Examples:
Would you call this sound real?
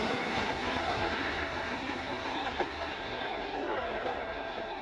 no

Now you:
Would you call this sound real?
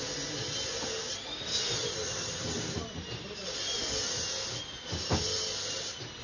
yes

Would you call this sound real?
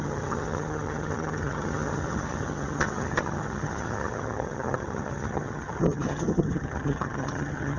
no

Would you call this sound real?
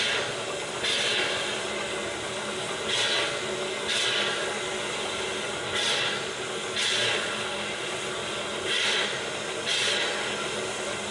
yes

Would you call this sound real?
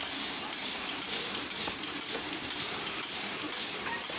no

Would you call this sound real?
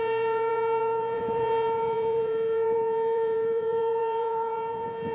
no